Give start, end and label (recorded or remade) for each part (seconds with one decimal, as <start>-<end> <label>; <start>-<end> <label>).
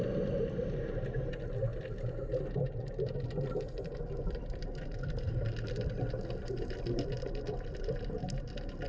0.0-8.9 recorded